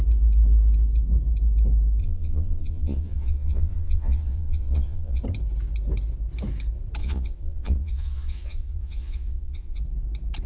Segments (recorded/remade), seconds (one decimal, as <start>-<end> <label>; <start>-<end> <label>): 0.0-2.0 recorded; 2.0-5.2 remade; 5.2-7.0 recorded; 7.0-9.8 remade; 9.8-10.5 recorded